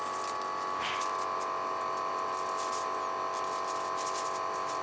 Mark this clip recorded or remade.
recorded